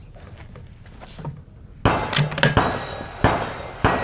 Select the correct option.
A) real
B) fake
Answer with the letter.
A